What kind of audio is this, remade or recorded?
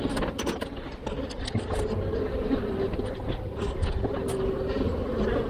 recorded